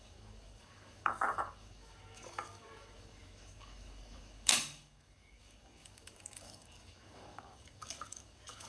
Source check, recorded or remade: remade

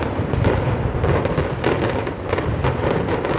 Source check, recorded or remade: recorded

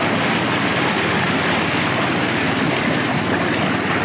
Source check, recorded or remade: recorded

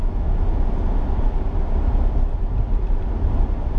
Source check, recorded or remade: recorded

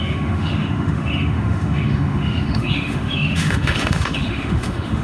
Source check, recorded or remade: remade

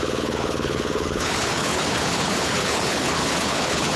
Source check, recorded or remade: remade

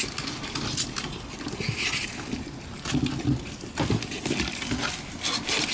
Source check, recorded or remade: recorded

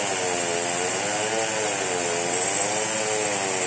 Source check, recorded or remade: recorded